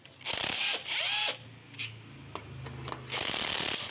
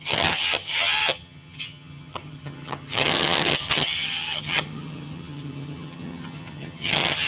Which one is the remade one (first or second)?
second